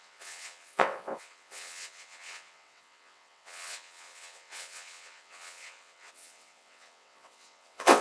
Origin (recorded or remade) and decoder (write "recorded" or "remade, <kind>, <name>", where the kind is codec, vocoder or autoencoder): remade, vocoder, WaveNeXt